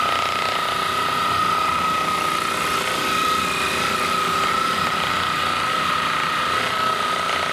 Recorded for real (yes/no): yes